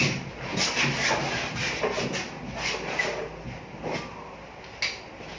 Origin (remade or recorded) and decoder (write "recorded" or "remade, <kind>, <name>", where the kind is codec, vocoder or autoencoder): recorded